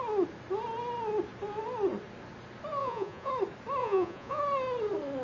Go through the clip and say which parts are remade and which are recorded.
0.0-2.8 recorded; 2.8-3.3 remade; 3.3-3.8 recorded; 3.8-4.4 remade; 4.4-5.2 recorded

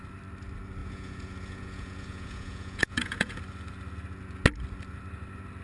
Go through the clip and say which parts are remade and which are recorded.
0.0-0.8 recorded; 0.8-3.4 remade; 3.4-5.6 recorded

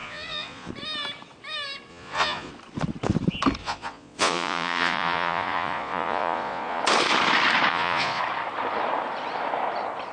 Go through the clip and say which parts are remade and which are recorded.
0.0-0.7 remade; 0.7-1.9 recorded; 1.9-2.5 remade; 2.5-3.6 recorded; 3.6-6.8 remade; 6.8-7.7 recorded; 7.7-8.2 remade; 8.2-10.1 recorded

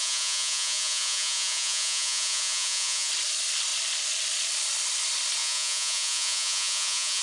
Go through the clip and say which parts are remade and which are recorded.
0.0-3.1 remade; 3.1-5.4 recorded; 5.4-7.2 remade